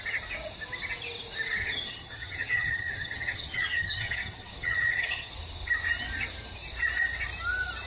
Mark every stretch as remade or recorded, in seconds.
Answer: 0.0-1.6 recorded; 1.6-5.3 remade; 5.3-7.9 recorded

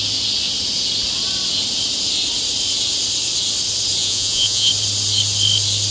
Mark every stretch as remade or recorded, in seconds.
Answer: 0.0-4.0 recorded; 4.0-4.7 remade; 4.7-5.9 recorded

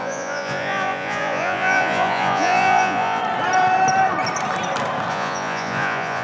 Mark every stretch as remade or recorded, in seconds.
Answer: 0.0-3.2 remade; 3.2-5.1 recorded; 5.1-6.2 remade

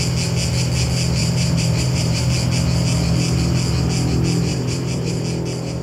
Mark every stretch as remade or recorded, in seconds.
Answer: 0.0-1.2 recorded; 1.2-2.2 remade; 2.2-4.5 recorded; 4.5-5.2 remade; 5.2-5.8 recorded

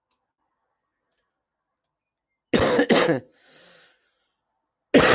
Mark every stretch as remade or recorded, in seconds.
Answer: 0.0-5.1 recorded

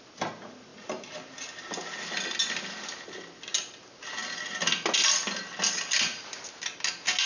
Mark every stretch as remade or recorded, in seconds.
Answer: 0.0-7.3 recorded

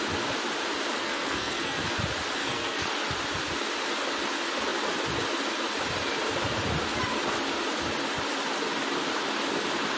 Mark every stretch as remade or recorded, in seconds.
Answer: 0.0-1.0 recorded; 1.0-1.8 remade; 1.8-2.4 recorded; 2.4-2.9 remade; 2.9-10.0 recorded

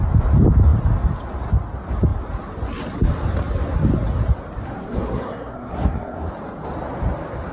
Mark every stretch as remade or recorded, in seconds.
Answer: 0.0-4.6 recorded; 4.6-6.3 remade; 6.3-7.5 recorded